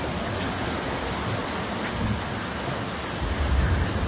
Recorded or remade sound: recorded